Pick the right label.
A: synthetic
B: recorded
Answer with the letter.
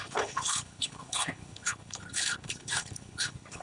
A